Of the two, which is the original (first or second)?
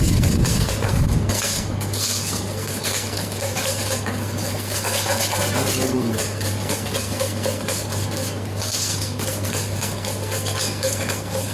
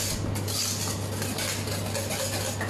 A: second